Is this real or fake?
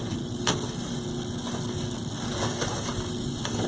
real